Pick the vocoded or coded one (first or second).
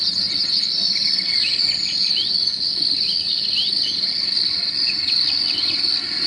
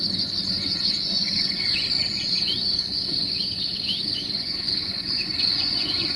second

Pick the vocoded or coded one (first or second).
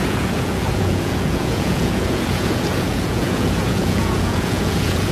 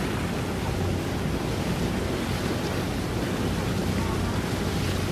first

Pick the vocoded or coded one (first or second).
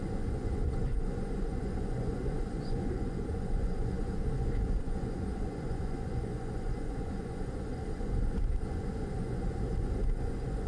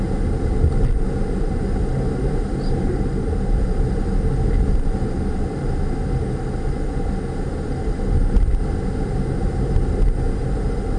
first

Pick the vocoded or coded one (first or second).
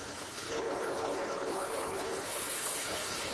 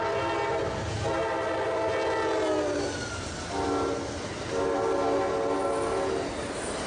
first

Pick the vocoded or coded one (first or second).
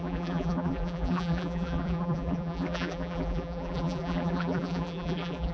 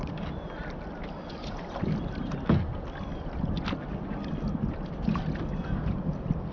first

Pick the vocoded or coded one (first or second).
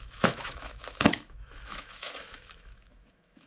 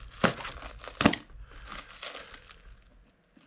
first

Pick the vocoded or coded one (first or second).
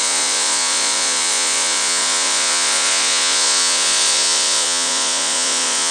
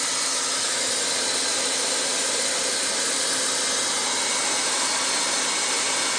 first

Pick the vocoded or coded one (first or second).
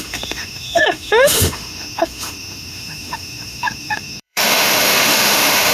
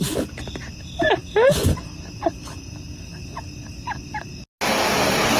first